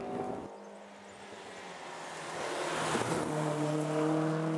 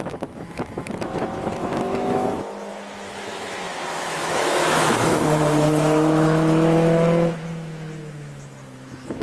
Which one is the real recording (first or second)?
first